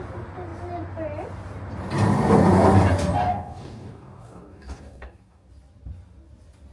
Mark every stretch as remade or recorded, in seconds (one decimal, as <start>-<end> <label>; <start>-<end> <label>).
0.0-3.3 recorded; 3.3-5.5 remade; 5.5-6.7 recorded